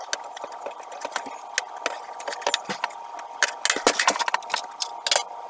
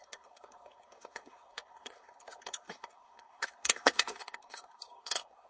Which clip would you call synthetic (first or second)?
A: second